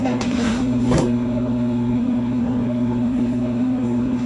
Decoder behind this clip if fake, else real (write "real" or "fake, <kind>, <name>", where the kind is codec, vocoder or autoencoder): fake, codec, SNAC